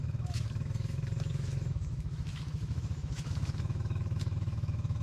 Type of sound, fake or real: fake